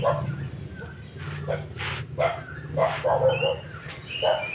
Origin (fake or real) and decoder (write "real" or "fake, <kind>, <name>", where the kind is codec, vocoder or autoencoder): real